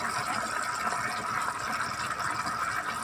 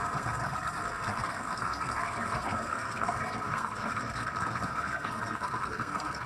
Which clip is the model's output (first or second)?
second